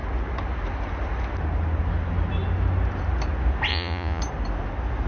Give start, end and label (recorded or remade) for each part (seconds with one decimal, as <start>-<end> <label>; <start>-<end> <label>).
0.0-3.7 recorded; 3.7-4.2 remade; 4.2-5.1 recorded